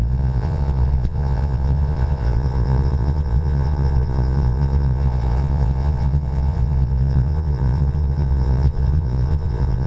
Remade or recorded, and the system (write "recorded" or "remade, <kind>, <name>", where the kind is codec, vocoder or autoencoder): remade, vocoder, Vocos